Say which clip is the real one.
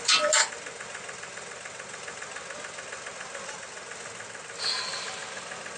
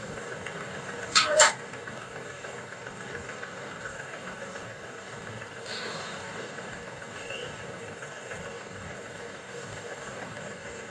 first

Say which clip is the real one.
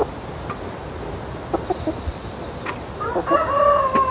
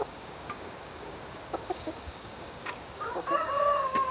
first